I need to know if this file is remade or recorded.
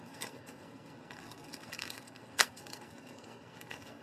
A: remade